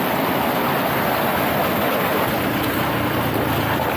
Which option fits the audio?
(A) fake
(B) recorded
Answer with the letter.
B